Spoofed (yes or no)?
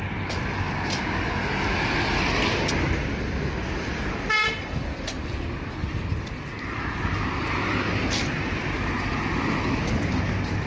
no